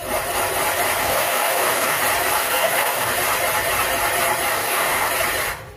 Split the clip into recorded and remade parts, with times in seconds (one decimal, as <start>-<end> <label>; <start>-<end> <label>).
0.0-1.0 recorded; 1.0-2.0 remade; 2.0-2.4 recorded; 2.4-3.1 remade; 3.1-4.5 recorded; 4.5-5.1 remade; 5.1-5.8 recorded